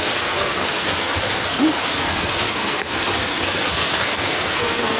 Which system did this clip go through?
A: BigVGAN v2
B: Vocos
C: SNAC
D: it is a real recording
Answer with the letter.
C